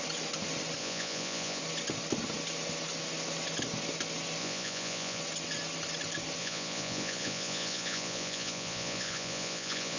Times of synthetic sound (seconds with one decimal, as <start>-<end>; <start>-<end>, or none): 0.8-1.6; 4.4-5.2; 6.4-10.0